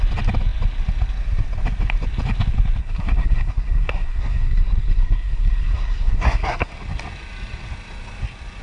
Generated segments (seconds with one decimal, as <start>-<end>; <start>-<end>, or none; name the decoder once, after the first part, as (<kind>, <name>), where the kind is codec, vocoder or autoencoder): 2.8-6.7 (codec, SNAC)